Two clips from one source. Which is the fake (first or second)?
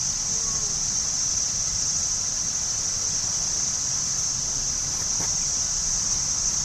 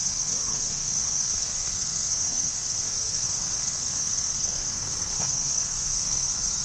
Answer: second